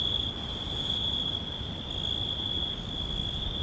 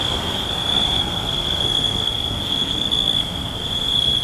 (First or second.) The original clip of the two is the first